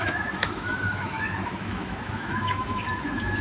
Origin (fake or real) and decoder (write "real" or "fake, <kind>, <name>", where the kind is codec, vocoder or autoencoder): fake, autoencoder, DAC-VAE